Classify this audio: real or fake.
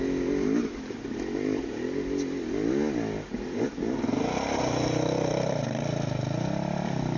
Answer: real